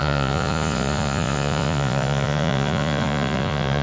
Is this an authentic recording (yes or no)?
no